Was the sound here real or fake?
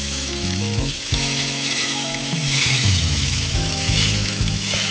fake